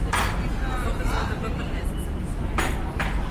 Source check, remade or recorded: recorded